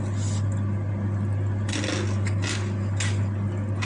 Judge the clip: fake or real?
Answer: real